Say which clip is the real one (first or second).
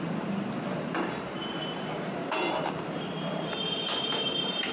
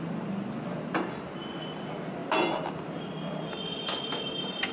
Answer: second